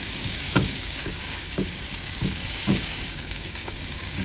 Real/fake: fake